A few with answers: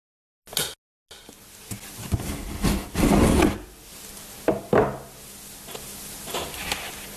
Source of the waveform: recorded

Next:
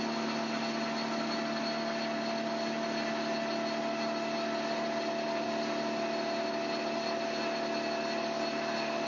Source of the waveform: recorded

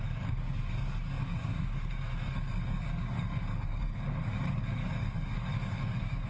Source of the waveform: remade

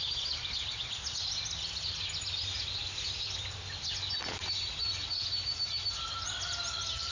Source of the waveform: recorded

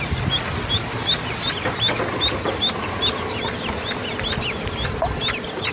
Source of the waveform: recorded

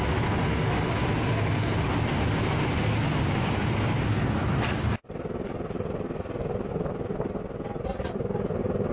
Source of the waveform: recorded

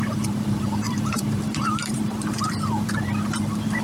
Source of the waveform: remade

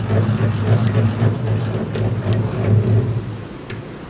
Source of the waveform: recorded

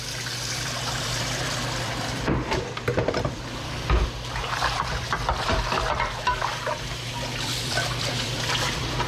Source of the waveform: remade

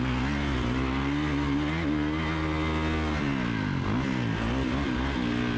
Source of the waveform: recorded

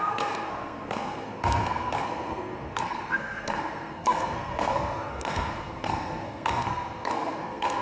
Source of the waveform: remade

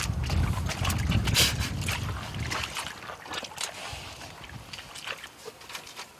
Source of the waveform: recorded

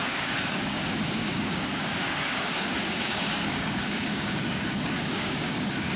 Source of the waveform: remade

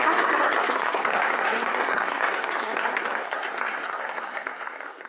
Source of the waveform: remade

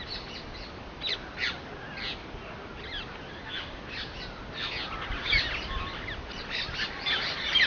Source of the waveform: recorded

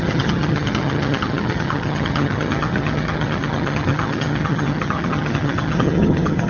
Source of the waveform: remade